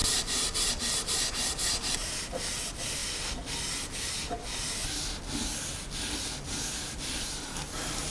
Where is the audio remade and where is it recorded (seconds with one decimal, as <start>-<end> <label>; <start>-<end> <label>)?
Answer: 0.0-8.1 recorded